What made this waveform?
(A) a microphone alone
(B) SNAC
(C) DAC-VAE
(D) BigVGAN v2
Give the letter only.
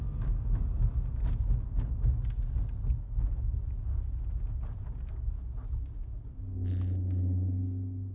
A